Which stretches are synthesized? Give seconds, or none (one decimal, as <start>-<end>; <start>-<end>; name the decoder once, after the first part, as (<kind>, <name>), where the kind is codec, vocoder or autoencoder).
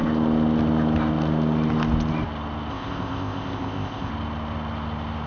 2.7-4.1 (codec, ZipCodec)